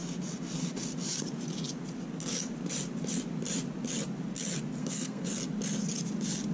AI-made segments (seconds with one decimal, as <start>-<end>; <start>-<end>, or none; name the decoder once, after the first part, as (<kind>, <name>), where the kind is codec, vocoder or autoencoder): 4.8-5.3 (codec, SNAC)